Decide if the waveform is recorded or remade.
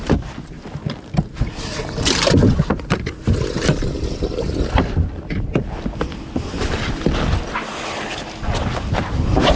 recorded